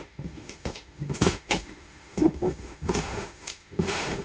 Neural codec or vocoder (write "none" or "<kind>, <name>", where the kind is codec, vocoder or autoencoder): autoencoder, DAC-VAE